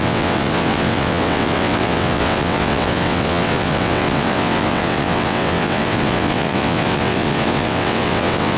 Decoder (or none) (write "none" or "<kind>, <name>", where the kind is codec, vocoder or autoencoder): vocoder, WaveNeXt